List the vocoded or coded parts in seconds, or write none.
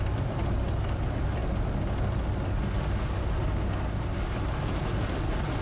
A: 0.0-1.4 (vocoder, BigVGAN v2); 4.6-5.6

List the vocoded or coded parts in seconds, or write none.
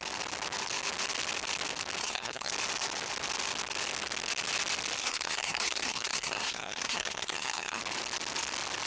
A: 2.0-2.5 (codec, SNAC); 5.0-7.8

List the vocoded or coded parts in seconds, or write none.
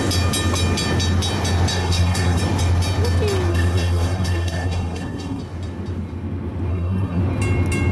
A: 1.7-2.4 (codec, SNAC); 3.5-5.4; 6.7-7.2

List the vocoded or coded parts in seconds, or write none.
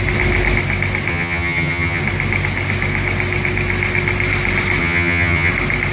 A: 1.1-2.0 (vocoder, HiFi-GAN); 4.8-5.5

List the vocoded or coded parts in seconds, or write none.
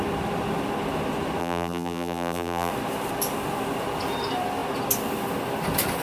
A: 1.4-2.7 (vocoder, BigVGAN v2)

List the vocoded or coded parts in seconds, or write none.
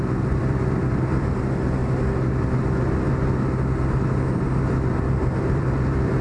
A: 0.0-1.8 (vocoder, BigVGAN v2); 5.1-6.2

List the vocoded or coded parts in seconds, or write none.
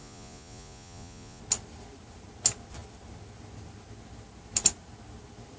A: 0.0-1.4 (vocoder, Vocos)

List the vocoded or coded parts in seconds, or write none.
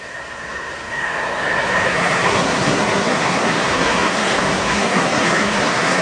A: 0.0-6.0 (codec, SNAC)